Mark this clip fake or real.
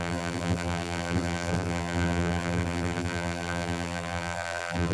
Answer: fake